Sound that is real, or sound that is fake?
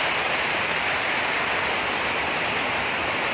fake